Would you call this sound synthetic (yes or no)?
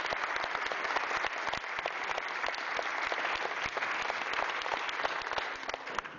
no